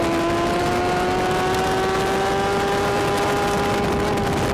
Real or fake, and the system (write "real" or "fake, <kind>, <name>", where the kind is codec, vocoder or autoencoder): real